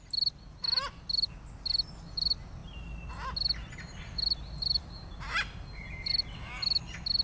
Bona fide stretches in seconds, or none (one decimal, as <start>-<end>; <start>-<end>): 0.0-7.2